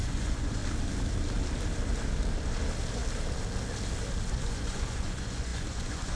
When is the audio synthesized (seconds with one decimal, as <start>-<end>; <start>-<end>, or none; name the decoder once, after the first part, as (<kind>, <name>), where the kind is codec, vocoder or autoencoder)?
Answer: 0.0-0.6 (vocoder, Vocos); 4.3-6.1

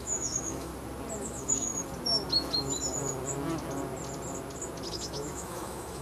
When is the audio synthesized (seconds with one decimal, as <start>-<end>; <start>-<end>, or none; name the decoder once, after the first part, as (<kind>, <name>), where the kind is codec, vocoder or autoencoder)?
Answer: 0.0-0.7 (autoencoder, DAC-VAE); 1.2-1.7; 4.9-6.0

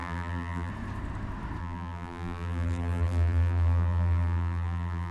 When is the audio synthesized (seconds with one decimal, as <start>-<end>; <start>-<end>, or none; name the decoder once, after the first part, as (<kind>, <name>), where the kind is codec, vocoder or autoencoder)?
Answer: 0.0-0.7 (vocoder, BigVGAN v2); 1.6-5.1

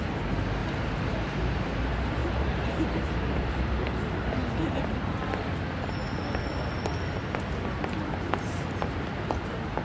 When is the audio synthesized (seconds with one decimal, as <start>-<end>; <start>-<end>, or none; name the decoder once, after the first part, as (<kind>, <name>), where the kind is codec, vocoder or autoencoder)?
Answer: 0.6-1.8 (vocoder, BigVGAN v2); 2.2-3.9